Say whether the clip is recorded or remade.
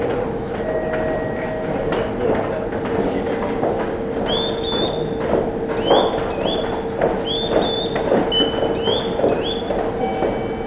recorded